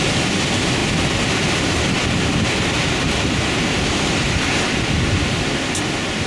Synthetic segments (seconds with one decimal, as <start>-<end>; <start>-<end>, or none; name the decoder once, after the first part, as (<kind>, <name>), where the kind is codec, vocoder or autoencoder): none